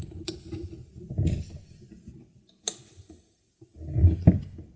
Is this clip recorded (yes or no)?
yes